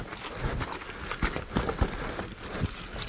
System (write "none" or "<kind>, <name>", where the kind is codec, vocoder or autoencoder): none